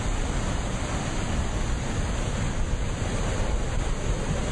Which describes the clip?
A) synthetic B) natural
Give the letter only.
B